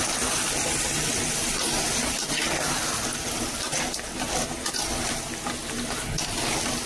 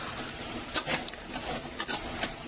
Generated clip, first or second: second